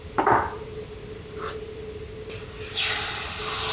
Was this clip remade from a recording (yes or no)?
no